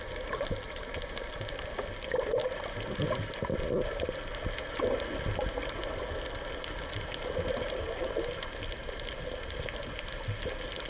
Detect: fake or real real